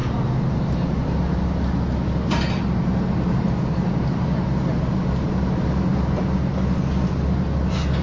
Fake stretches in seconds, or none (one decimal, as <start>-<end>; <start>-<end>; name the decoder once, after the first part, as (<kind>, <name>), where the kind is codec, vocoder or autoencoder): none